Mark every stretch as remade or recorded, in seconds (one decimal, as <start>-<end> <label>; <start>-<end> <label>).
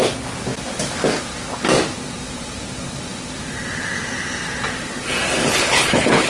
0.0-5.4 recorded; 5.4-6.3 remade